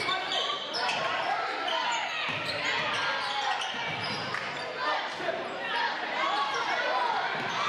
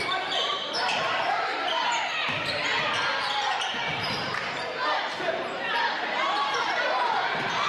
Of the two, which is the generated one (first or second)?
second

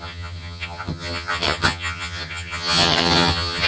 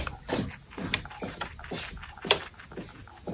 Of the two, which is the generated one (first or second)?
first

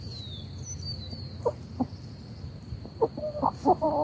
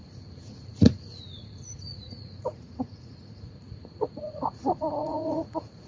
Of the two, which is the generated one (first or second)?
second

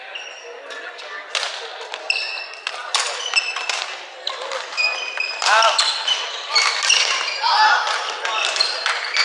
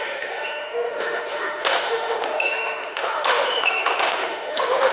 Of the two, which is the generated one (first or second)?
second